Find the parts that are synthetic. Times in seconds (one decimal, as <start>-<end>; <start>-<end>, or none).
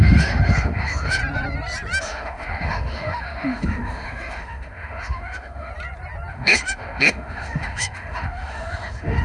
0.0-1.2; 2.0-5.7; 6.3-9.2